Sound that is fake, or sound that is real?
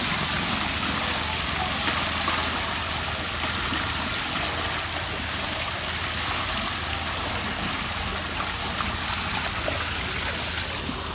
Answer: real